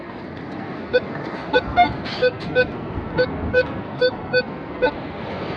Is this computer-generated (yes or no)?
yes